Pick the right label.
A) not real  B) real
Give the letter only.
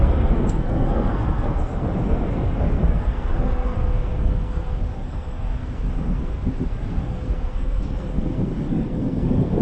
A